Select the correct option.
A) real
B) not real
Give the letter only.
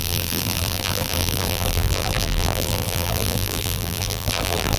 B